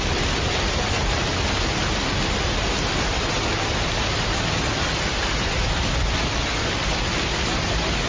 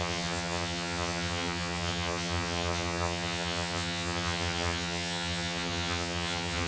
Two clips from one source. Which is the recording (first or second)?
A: first